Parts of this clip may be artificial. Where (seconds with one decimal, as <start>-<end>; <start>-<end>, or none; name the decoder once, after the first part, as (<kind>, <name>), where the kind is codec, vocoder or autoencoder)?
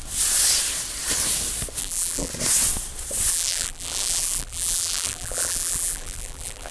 1.8-2.3 (vocoder, BigVGAN v2); 3.3-6.7